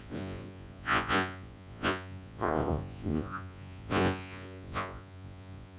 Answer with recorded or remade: remade